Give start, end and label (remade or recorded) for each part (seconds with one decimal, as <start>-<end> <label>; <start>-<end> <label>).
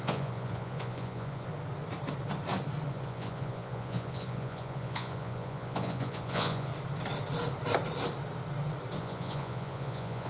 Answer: 0.0-1.5 remade; 1.5-2.9 recorded; 2.9-6.7 remade; 6.7-9.0 recorded; 9.0-10.3 remade